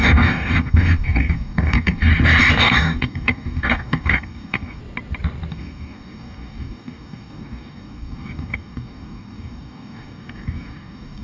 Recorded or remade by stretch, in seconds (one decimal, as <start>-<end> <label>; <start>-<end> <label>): 0.0-2.1 remade; 2.1-2.6 recorded; 2.6-4.8 remade; 4.8-5.5 recorded; 5.5-11.2 remade